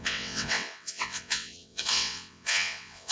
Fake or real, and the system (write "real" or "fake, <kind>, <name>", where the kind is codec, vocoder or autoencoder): fake, vocoder, WaveNeXt